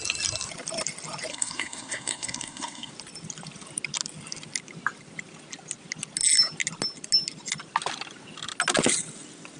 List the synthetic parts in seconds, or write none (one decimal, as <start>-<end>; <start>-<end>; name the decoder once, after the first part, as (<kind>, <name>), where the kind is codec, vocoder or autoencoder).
1.3-2.9 (codec, SNAC)